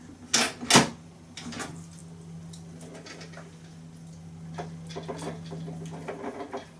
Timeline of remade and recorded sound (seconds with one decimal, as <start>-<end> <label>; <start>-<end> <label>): 0.0-6.8 recorded